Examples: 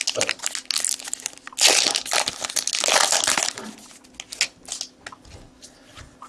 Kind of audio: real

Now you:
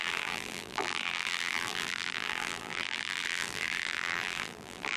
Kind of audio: fake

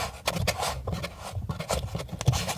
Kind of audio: real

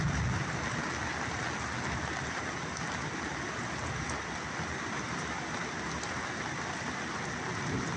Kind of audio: real